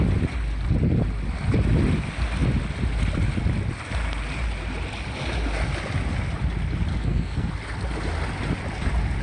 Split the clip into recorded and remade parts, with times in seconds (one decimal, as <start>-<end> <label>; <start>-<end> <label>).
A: 0.0-6.9 recorded; 6.9-7.5 remade; 7.5-9.2 recorded